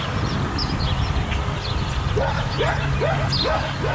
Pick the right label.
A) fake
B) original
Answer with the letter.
B